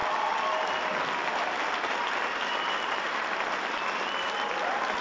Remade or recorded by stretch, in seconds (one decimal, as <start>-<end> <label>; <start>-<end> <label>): 0.0-5.0 recorded